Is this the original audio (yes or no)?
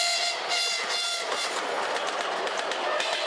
yes